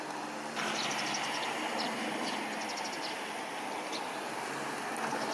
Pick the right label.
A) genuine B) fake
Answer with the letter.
A